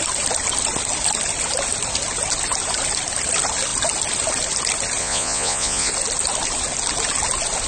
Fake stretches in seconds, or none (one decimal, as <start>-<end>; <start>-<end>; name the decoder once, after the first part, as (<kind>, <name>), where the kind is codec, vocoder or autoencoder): 5.0-5.9 (vocoder, Vocos)